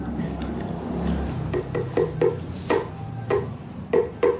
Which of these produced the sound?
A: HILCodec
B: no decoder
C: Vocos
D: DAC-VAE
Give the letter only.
B